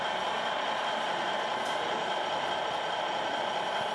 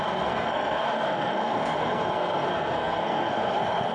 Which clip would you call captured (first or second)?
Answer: first